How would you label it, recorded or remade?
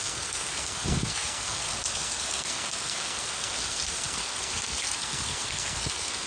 remade